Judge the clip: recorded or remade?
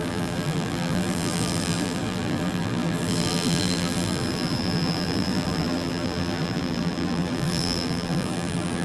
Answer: remade